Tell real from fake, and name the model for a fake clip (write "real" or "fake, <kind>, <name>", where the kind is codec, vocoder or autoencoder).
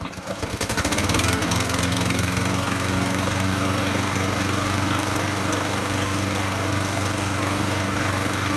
fake, codec, DAC